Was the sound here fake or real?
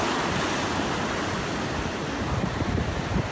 real